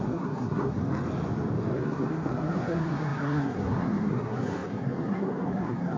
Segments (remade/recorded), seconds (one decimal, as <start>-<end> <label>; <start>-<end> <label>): 0.0-0.8 remade; 0.8-1.7 recorded; 1.7-6.0 remade